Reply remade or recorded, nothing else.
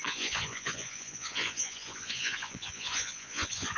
remade